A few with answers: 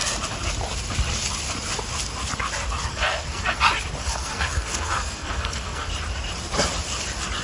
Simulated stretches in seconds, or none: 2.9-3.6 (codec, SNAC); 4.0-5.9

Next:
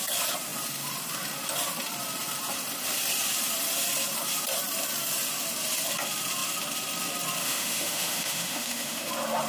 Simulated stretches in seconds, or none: 7.4-9.1 (autoencoder, DAC-VAE)

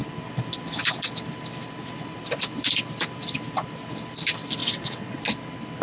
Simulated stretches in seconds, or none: 4.6-5.2 (vocoder, WaveNeXt)

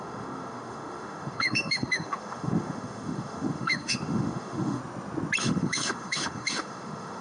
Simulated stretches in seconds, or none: 0.0-4.8 (autoencoder, DAC-VAE); 5.4-7.2

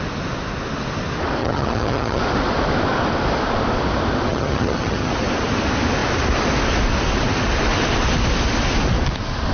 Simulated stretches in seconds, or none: 1.4-2.2 (vocoder, HiFi-GAN); 4.3-5.1

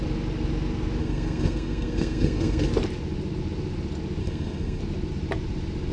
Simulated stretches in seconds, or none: 1.0-2.7 (codec, SNAC); 4.2-4.8

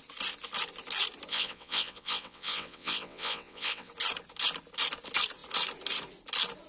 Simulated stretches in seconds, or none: 1.3-3.9 (vocoder, WaveNeXt)

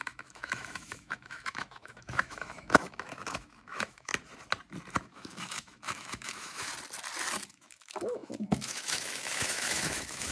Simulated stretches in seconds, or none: 0.0-4.1 (autoencoder, DAC-VAE); 5.0-6.7; 7.5-10.3